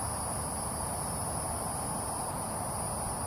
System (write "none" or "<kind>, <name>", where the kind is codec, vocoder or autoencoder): none